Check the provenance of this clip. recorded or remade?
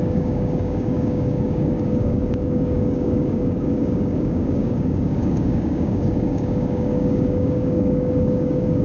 remade